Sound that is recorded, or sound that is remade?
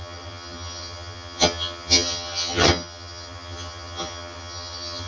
remade